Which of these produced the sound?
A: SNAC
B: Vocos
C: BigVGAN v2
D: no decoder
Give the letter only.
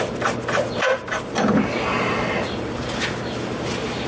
D